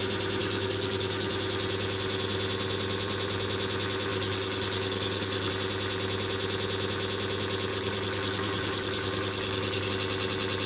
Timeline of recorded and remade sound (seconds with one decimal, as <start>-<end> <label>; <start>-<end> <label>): 0.0-0.4 recorded; 0.4-1.3 remade; 1.3-4.1 recorded; 4.1-5.5 remade; 5.5-7.7 recorded; 7.7-9.9 remade; 9.9-10.7 recorded